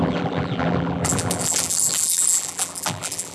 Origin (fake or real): fake